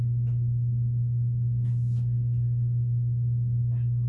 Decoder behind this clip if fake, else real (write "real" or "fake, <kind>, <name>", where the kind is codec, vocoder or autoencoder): real